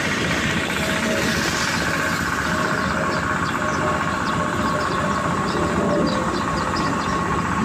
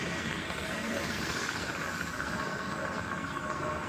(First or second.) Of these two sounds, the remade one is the second